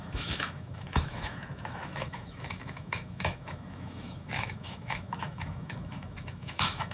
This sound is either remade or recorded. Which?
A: remade